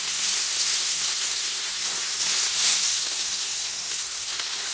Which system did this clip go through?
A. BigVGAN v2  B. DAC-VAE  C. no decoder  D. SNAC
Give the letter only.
D